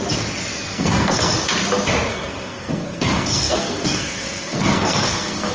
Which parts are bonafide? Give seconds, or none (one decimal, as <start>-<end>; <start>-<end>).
0.0-0.5; 1.3-2.1